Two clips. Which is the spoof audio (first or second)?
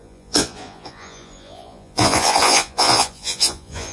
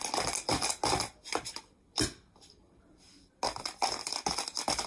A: first